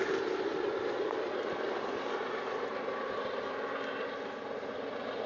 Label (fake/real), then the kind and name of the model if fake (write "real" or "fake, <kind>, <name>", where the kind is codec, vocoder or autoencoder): real